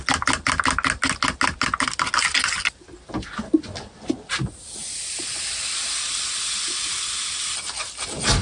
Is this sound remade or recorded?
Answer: recorded